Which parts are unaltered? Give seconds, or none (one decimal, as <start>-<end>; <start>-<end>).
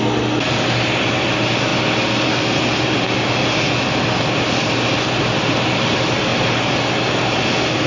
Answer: 0.0-7.9